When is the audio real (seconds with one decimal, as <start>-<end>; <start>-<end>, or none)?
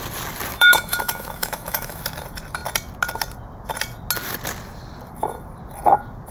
0.0-0.5; 2.0-6.3